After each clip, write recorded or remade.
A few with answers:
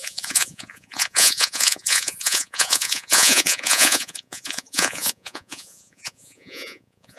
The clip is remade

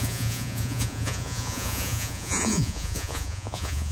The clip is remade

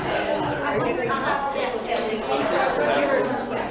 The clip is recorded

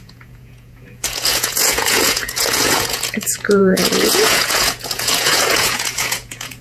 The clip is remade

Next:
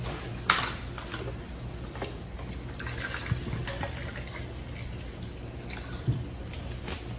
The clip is recorded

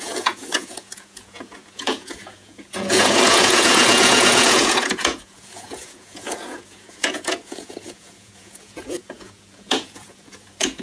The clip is remade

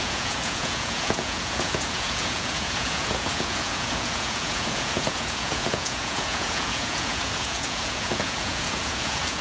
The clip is remade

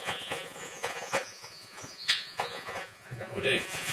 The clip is remade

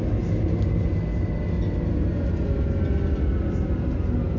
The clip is recorded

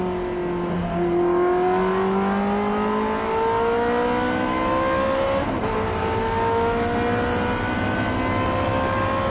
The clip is recorded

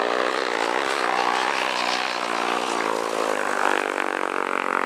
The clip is recorded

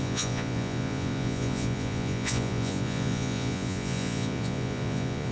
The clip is remade